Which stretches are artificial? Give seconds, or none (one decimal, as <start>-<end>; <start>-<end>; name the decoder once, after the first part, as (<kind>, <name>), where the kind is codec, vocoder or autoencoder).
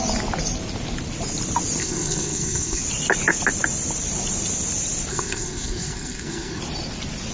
1.8-2.8 (codec, SNAC); 5.1-6.6